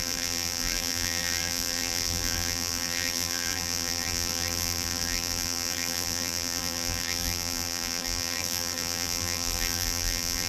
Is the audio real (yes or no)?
no